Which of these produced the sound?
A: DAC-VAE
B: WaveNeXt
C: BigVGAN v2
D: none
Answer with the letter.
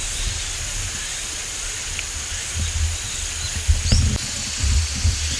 D